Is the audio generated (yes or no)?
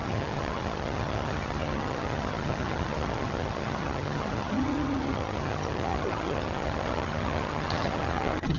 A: yes